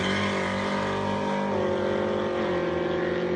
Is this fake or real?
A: real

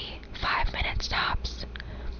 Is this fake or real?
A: real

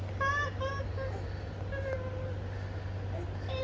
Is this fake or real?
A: real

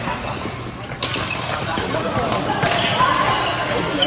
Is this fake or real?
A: real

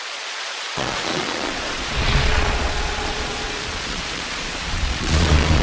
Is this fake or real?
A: fake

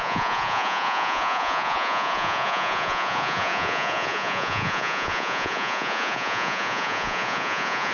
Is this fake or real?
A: fake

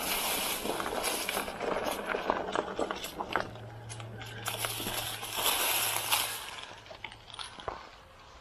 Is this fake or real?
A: real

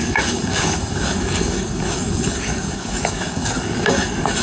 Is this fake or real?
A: fake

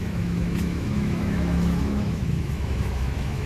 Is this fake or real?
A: fake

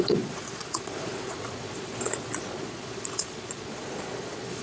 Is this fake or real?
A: fake